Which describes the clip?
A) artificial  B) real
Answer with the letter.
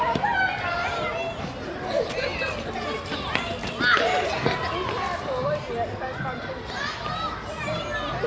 B